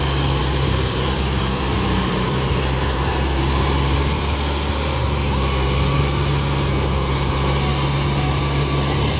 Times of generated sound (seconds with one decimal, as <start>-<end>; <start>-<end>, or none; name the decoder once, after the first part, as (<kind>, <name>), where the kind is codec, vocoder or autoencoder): 0.4-4.3 (vocoder, BigVGAN v2)

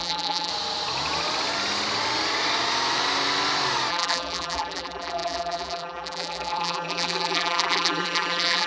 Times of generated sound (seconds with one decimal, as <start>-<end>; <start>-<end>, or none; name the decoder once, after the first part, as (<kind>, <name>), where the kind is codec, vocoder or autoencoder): 0.0-0.5 (vocoder, BigVGAN v2); 3.9-8.7